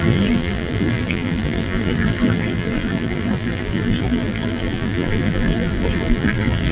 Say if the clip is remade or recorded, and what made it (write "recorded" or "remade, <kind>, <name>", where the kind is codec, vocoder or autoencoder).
remade, vocoder, BigVGAN v2